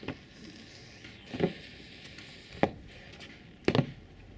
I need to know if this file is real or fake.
real